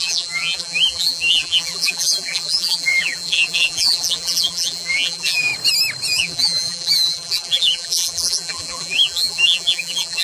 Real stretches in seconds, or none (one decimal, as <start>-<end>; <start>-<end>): 5.5-6.1

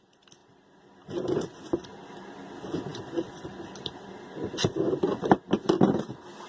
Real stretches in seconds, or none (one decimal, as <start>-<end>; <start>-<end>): 0.0-6.5

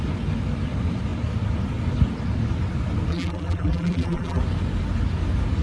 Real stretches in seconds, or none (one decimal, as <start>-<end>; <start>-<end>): 0.0-3.1; 4.4-5.6